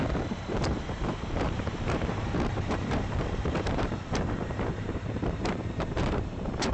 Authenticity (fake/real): fake